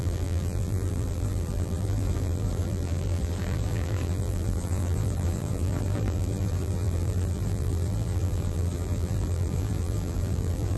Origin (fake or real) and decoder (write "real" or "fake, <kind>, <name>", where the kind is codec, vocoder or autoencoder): fake, vocoder, BigVGAN v2